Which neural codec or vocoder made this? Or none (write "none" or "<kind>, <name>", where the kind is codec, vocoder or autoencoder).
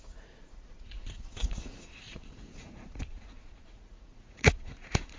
vocoder, Vocos